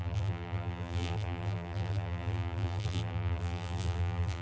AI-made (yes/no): yes